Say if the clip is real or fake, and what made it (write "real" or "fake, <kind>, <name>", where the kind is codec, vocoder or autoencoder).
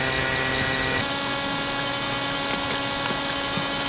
real